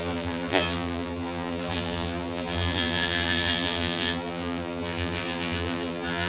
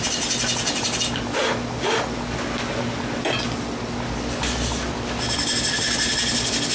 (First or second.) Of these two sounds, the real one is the second